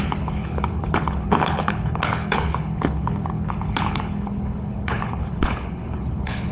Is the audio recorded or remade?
remade